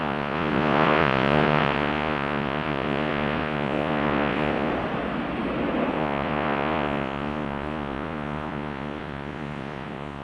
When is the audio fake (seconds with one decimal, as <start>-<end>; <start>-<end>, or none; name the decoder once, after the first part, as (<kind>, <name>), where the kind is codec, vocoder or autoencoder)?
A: 0.0-4.7 (vocoder, Vocos); 5.9-10.2